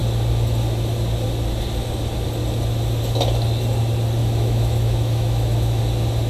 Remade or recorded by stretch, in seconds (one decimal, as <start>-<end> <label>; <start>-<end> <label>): 0.0-4.2 recorded; 4.2-5.8 remade; 5.8-6.3 recorded